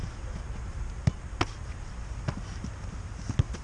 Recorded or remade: recorded